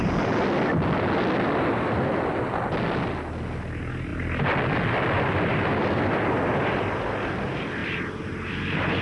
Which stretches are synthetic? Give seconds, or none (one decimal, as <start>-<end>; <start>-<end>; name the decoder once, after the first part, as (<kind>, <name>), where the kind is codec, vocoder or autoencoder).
none